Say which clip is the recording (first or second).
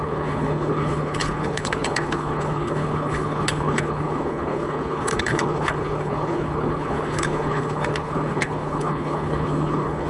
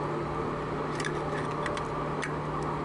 second